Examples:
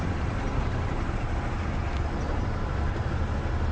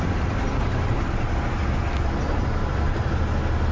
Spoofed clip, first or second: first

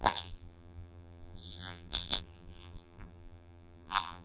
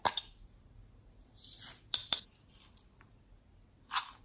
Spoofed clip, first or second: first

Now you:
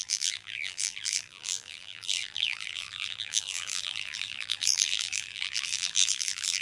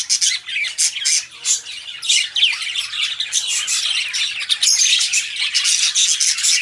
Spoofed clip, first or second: first